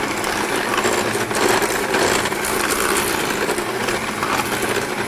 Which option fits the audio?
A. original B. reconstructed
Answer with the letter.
A